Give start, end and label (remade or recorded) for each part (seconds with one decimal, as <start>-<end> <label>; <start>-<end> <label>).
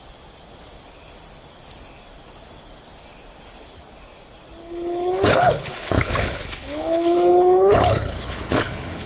0.0-4.6 recorded; 4.6-9.1 remade